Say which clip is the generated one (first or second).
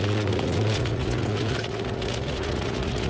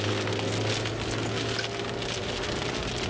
first